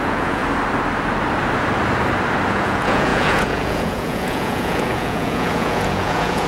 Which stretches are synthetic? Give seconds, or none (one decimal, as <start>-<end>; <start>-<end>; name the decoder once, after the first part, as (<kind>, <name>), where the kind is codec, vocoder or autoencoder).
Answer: 0.0-0.4 (vocoder, Vocos); 2.5-6.5